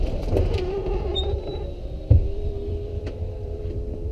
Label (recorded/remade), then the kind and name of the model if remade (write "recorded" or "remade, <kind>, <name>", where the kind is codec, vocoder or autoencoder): remade, vocoder, BigVGAN v2